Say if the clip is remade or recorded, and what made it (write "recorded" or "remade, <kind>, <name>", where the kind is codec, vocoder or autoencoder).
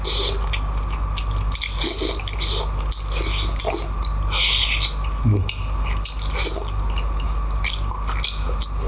recorded